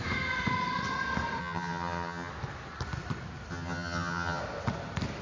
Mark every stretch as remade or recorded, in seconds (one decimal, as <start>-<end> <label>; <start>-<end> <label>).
0.0-1.4 recorded; 1.4-2.3 remade; 2.3-3.5 recorded; 3.5-4.4 remade; 4.4-5.2 recorded